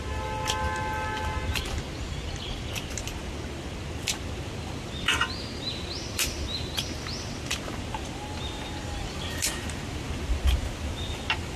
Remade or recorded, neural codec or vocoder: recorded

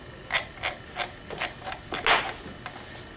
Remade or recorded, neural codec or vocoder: recorded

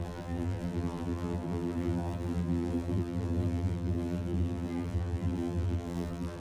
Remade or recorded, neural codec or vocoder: remade, vocoder, BigVGAN v2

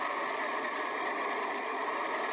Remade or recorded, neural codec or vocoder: remade, vocoder, BigVGAN v2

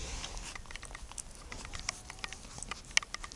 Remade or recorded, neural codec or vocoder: recorded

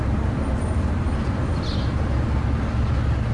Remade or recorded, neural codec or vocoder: recorded